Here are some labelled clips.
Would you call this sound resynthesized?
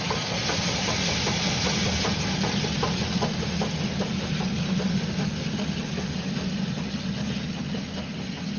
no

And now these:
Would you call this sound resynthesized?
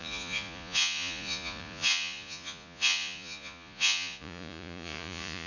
yes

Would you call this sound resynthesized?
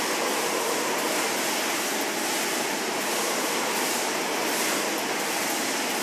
no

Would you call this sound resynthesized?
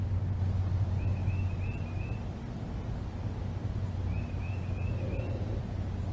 no